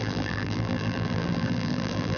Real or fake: fake